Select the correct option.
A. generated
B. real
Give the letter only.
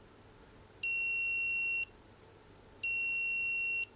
B